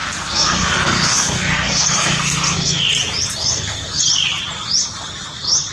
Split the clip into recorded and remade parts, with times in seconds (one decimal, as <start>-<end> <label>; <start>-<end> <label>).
0.0-2.9 remade; 2.9-3.4 recorded; 3.4-4.0 remade; 4.0-5.7 recorded